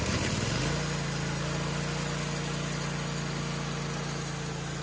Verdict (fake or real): real